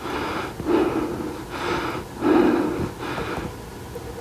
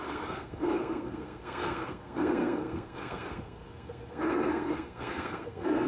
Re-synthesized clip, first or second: second